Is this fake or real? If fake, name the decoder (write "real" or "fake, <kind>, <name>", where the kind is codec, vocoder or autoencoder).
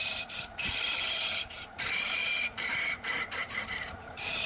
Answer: fake, vocoder, BigVGAN v2